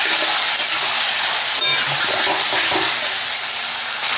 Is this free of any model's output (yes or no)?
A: yes